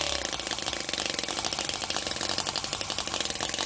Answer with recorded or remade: recorded